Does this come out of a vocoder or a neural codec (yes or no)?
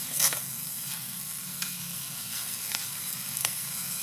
yes